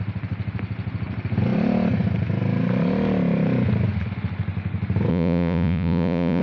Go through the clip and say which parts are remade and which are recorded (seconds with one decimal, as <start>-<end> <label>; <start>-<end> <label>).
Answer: 0.0-5.1 recorded; 5.1-6.4 remade

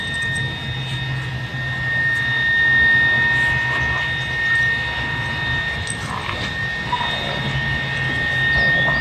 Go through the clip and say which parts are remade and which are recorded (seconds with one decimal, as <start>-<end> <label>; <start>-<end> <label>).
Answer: 0.0-9.0 recorded

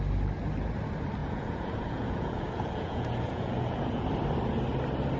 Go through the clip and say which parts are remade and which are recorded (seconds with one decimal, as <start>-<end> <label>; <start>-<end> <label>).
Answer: 0.0-1.2 recorded; 1.2-4.1 remade; 4.1-5.2 recorded

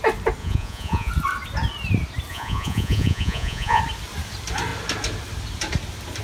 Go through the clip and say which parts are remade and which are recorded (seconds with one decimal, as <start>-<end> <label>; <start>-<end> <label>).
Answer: 0.0-0.4 recorded; 0.4-1.1 remade; 1.1-2.3 recorded; 2.3-3.8 remade; 3.8-6.2 recorded

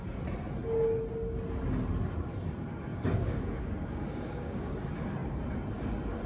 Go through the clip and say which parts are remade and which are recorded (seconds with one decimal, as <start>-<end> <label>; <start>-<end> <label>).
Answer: 0.0-2.9 recorded; 2.9-4.7 remade; 4.7-6.3 recorded

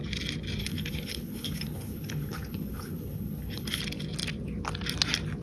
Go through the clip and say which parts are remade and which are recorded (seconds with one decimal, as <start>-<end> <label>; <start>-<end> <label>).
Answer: 0.0-0.6 recorded; 0.6-3.8 remade; 3.8-5.4 recorded

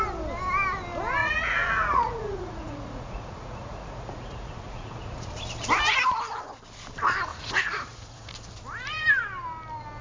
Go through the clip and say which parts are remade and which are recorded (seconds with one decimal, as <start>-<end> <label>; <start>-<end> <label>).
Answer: 0.0-1.2 recorded; 1.2-5.3 remade; 5.3-7.3 recorded; 7.3-8.3 remade; 8.3-10.0 recorded